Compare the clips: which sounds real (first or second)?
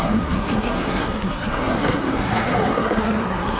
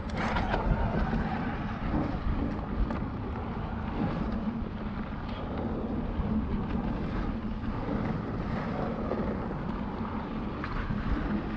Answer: second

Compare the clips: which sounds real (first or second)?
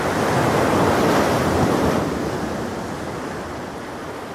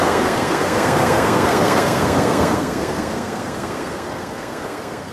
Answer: first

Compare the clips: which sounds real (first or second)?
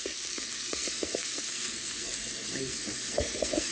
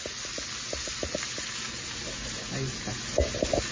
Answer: second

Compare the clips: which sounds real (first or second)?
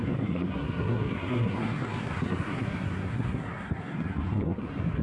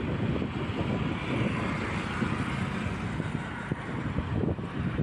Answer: second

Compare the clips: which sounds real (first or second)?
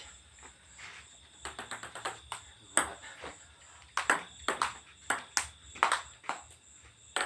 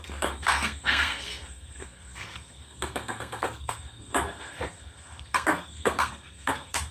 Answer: first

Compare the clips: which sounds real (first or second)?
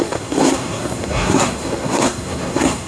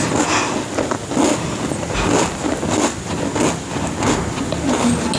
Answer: second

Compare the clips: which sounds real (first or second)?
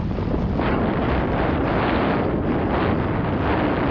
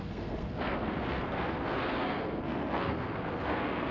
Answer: first